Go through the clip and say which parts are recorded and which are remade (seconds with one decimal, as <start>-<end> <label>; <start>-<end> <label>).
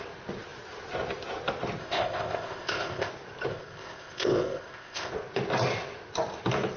0.0-1.8 recorded; 1.8-3.1 remade; 3.1-3.5 recorded; 3.5-5.1 remade; 5.1-6.8 recorded